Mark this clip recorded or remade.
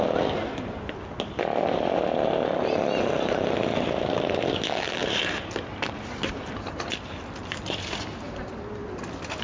recorded